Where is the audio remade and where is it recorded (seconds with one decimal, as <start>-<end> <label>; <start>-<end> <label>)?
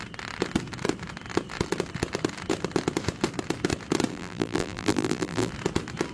0.0-4.1 recorded; 4.1-5.5 remade; 5.5-6.1 recorded